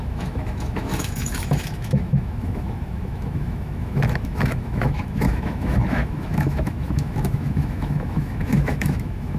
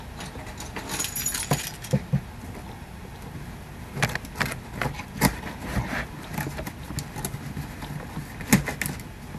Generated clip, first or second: first